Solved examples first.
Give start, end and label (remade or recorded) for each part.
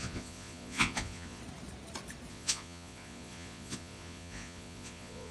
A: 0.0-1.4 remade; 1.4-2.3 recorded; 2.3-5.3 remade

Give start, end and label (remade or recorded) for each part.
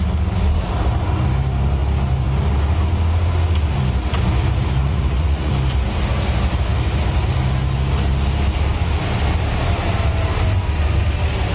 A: 0.0-4.8 recorded; 4.8-5.5 remade; 5.5-11.5 recorded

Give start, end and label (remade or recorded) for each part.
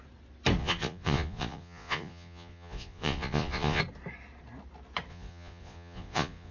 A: 0.0-0.6 recorded; 0.6-3.8 remade; 3.8-5.1 recorded; 5.1-6.5 remade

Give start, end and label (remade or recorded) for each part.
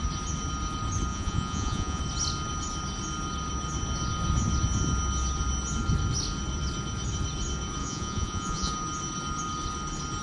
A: 0.0-1.1 recorded; 1.1-2.0 remade; 2.0-7.8 recorded; 7.8-8.7 remade; 8.7-10.2 recorded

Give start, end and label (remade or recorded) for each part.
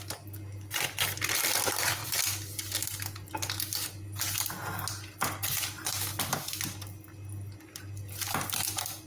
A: 0.0-9.1 recorded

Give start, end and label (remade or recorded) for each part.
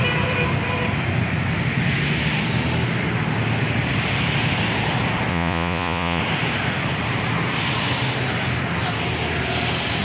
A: 0.0-5.3 recorded; 5.3-6.2 remade; 6.2-10.0 recorded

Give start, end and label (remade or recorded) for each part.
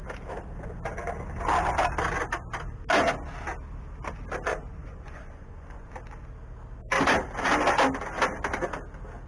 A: 0.0-4.5 recorded; 4.5-5.9 remade; 5.9-9.3 recorded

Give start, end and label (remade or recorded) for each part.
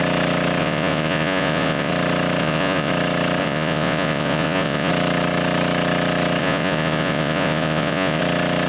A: 0.0-0.6 recorded; 0.6-1.9 remade; 1.9-2.4 recorded; 2.4-2.9 remade; 2.9-3.4 recorded; 3.4-4.9 remade; 4.9-6.4 recorded; 6.4-8.2 remade; 8.2-8.7 recorded